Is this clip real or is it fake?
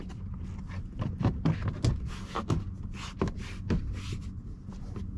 real